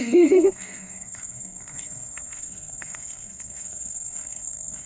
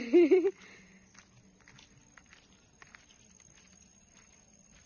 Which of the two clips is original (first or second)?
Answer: second